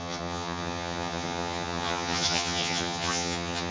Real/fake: fake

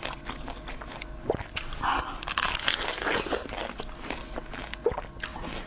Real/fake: real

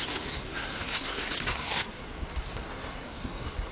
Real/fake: fake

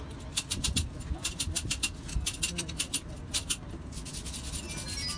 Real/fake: fake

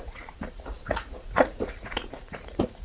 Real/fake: fake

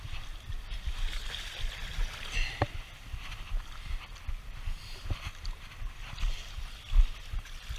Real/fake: real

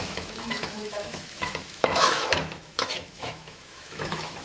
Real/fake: fake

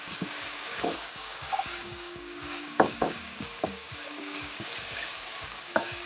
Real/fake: fake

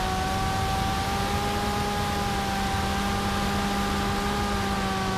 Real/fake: real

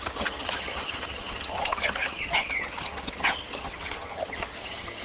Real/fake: fake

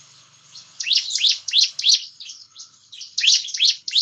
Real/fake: fake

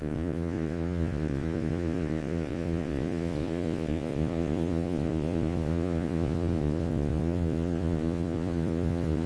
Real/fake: fake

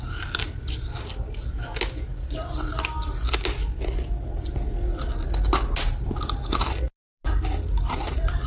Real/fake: real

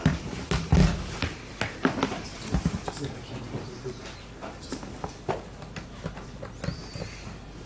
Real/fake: real